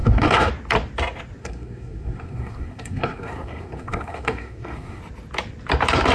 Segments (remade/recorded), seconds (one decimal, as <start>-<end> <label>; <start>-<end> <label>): 0.0-0.5 remade; 0.5-1.4 recorded; 1.4-5.0 remade; 5.0-6.1 recorded